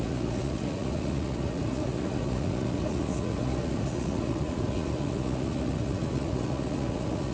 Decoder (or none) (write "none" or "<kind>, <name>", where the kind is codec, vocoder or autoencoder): vocoder, Vocos